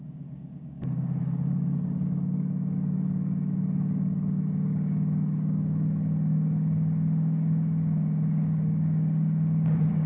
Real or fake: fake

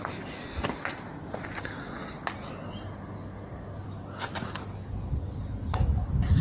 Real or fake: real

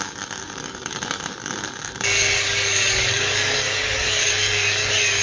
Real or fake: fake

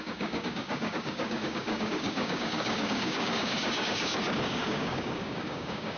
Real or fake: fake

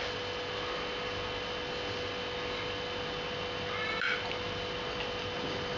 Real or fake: real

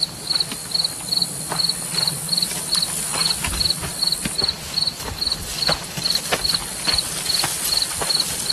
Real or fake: real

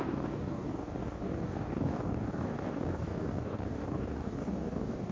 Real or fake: fake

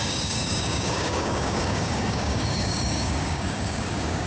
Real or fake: fake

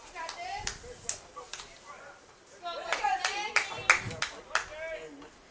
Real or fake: real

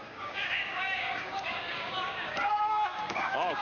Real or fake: fake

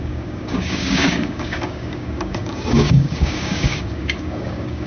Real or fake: fake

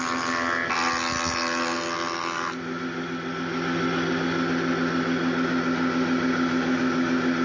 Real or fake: real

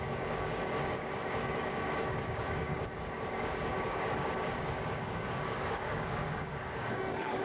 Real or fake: fake